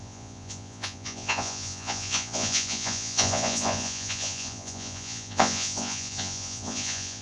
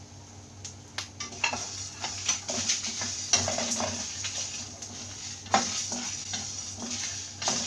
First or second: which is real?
second